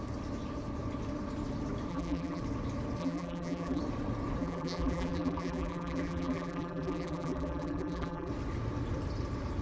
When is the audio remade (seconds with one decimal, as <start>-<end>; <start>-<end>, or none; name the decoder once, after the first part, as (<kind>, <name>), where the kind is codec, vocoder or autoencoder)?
1.9-2.4 (vocoder, BigVGAN v2); 3.0-3.8; 4.4-8.3